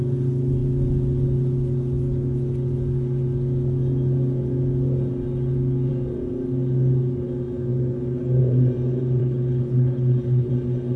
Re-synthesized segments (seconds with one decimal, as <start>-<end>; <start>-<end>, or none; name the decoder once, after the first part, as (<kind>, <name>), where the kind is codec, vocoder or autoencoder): 9.2-10.5 (codec, HILCodec)